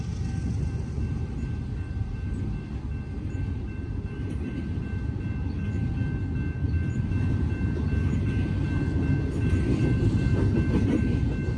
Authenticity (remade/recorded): recorded